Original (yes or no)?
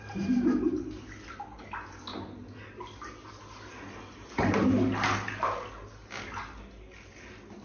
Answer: yes